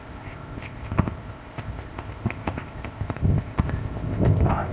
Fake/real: fake